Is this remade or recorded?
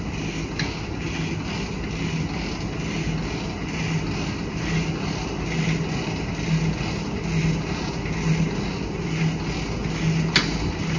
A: recorded